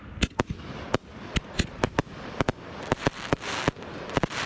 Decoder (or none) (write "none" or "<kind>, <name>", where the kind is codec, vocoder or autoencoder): none